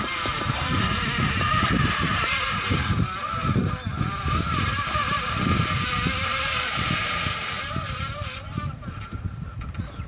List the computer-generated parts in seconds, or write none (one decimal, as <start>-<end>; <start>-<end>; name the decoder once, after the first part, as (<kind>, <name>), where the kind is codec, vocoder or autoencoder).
0.0-10.1 (vocoder, BigVGAN v2)